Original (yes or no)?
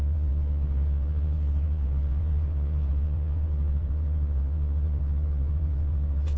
no